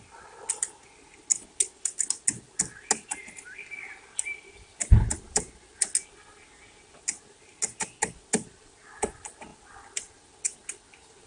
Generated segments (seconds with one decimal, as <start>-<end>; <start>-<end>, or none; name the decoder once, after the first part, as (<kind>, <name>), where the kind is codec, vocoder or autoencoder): none